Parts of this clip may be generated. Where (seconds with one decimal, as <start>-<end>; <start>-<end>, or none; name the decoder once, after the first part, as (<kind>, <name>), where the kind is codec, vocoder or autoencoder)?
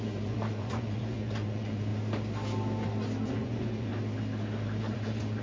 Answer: 0.0-1.9 (vocoder, Vocos); 3.3-3.9; 4.8-5.4